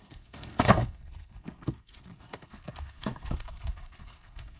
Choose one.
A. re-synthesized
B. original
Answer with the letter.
A